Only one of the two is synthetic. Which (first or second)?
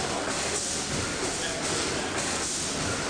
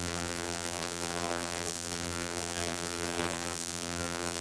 second